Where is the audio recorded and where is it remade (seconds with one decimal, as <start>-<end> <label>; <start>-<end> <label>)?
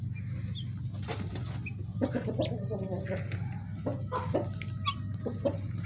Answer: 0.0-1.9 recorded; 1.9-3.0 remade; 3.0-5.9 recorded